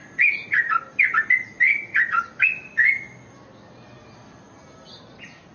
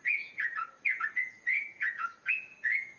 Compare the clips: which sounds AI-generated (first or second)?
second